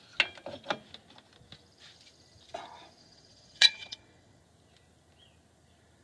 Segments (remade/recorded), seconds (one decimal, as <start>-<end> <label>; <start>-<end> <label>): 0.0-3.0 recorded; 3.0-4.4 remade; 4.4-6.0 recorded